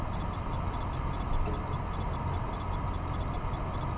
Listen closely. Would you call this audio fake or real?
real